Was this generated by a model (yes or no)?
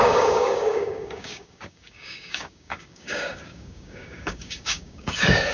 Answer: yes